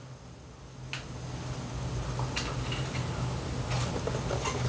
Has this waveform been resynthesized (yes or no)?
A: no